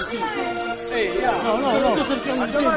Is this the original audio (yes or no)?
yes